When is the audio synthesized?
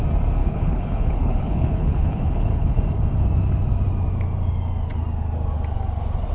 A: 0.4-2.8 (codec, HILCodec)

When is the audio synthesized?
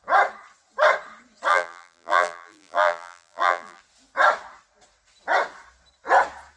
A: 1.5-3.8 (vocoder, BigVGAN v2)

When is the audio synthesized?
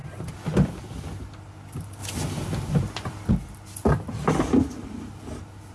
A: none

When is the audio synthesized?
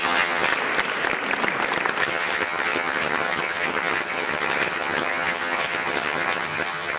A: 0.0-0.5 (vocoder, HiFi-GAN); 2.0-7.0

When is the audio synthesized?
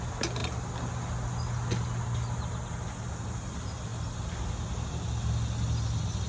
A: none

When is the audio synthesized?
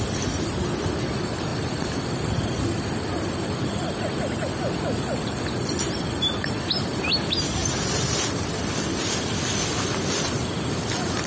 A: 1.5-6.6 (vocoder, BigVGAN v2)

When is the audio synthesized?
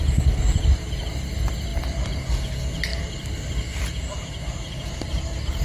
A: 2.9-5.0 (vocoder, BigVGAN v2)